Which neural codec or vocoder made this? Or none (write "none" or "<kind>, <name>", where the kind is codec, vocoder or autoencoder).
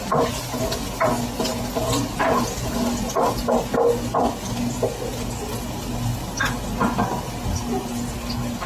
none